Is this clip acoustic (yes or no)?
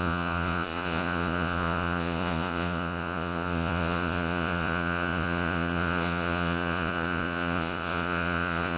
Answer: no